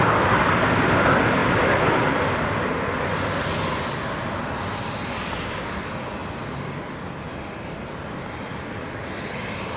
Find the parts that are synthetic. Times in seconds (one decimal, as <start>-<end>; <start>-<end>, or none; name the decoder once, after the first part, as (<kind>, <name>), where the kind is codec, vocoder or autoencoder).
none